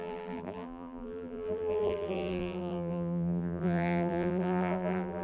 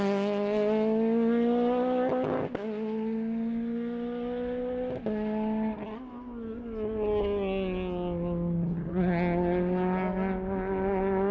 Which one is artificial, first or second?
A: first